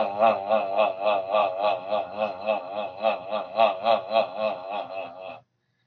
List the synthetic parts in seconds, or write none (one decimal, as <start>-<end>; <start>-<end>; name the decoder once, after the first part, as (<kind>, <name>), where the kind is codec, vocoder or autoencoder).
1.4-4.9 (autoencoder, DAC-VAE)